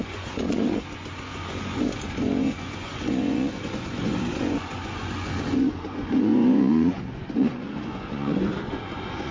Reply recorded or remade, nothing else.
remade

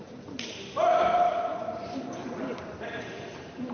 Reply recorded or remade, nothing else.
remade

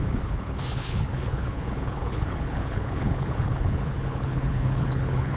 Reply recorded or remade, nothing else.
remade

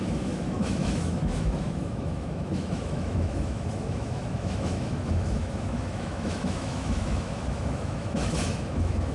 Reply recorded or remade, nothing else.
remade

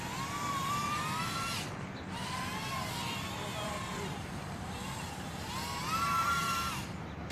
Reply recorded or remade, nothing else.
recorded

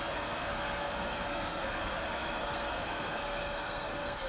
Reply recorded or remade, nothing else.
remade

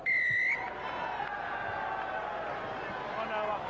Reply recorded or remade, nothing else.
recorded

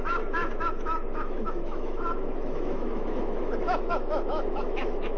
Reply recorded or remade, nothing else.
remade